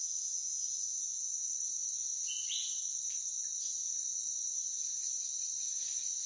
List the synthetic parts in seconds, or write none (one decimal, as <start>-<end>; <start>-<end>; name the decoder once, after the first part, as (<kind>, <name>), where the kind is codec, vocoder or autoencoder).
none